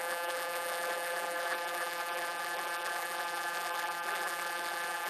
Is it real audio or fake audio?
fake